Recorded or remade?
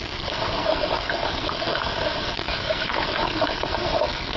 remade